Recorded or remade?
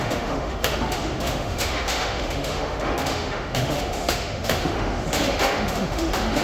remade